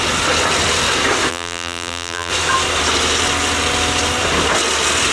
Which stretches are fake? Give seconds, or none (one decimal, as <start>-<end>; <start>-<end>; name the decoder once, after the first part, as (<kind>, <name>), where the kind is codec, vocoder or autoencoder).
1.3-2.3 (vocoder, BigVGAN v2)